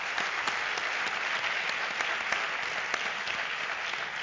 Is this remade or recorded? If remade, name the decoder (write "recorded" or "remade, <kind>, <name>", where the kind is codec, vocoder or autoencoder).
recorded